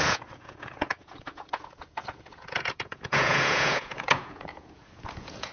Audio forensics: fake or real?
fake